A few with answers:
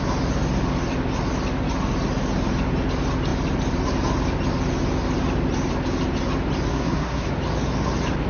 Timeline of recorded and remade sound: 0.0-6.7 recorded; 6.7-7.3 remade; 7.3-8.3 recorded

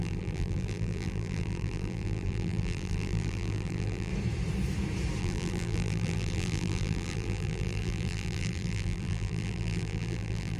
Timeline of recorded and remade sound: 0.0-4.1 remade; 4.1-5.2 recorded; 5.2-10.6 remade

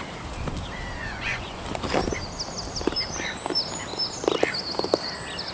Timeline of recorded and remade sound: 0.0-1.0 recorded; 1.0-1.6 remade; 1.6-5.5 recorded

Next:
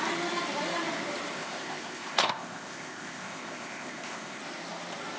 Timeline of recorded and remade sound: 0.0-1.3 recorded; 1.3-4.4 remade; 4.4-5.2 recorded